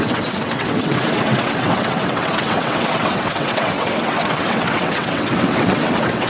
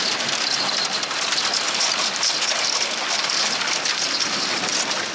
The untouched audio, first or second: second